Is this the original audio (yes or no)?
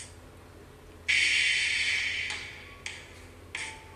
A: yes